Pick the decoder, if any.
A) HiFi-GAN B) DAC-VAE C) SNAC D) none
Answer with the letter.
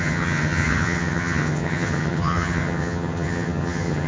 A